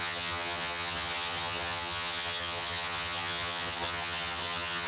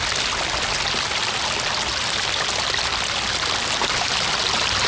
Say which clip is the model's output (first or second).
first